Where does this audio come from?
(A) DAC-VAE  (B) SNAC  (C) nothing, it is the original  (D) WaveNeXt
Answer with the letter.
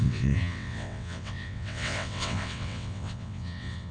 D